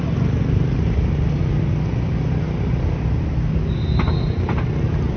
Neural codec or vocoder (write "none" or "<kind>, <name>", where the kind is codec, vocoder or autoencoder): none